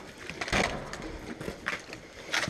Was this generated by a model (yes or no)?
no